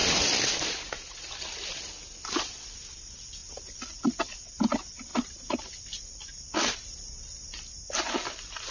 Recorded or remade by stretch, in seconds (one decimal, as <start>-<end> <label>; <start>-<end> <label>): 0.0-2.3 recorded; 2.3-8.7 remade